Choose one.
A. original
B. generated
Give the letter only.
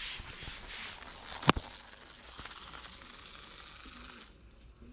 A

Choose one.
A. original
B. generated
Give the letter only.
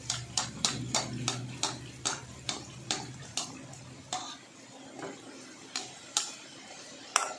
A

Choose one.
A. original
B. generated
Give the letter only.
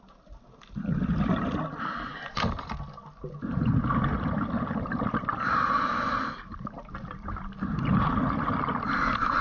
A